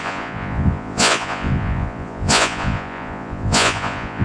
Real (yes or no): no